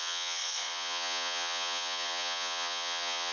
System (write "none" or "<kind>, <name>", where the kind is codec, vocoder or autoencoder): vocoder, Vocos